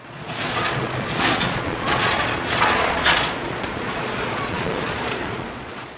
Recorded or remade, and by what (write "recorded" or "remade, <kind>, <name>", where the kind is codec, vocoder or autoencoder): remade, vocoder, Vocos